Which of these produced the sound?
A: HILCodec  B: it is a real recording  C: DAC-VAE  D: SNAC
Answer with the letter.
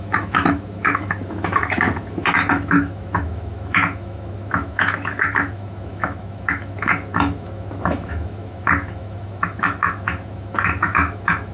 C